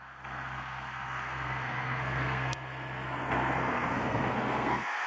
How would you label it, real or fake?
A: fake